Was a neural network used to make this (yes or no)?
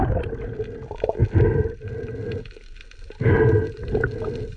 no